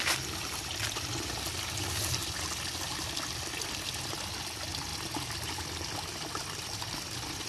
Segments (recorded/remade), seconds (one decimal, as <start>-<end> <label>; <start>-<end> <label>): 0.0-7.5 recorded